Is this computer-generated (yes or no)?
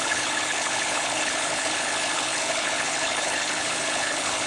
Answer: yes